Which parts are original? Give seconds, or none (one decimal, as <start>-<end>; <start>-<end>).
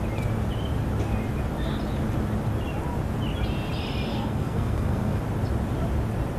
0.0-4.1; 5.2-6.4